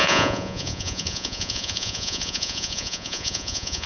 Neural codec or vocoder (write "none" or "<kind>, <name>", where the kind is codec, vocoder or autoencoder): vocoder, Vocos